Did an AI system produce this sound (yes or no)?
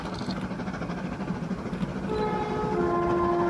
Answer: no